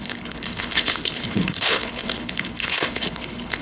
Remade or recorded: remade